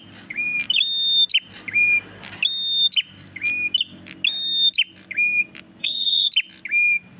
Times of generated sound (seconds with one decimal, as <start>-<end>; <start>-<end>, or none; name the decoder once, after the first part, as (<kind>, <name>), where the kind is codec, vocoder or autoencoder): 5.8-6.3 (codec, SNAC)